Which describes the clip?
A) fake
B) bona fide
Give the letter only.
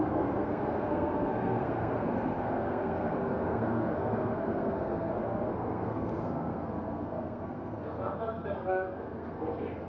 A